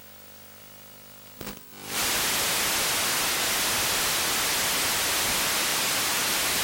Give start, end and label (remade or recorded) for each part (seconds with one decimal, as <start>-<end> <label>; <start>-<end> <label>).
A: 0.0-5.7 recorded; 5.7-6.6 remade